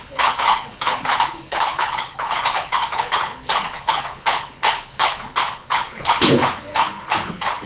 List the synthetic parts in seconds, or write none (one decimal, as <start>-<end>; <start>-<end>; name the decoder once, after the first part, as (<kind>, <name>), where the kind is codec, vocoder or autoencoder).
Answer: 0.0-7.7 (codec, HILCodec)